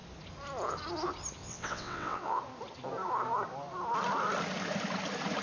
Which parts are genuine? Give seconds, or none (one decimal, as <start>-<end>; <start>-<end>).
0.0-1.4; 2.4-5.4